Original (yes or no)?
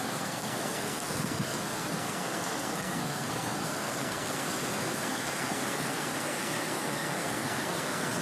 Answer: no